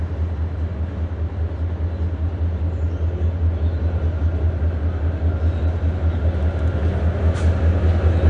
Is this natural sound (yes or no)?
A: yes